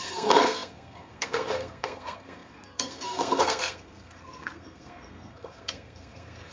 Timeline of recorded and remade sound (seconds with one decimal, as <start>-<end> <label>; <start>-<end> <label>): 0.0-6.5 remade